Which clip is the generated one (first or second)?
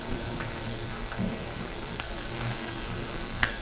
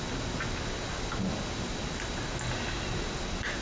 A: first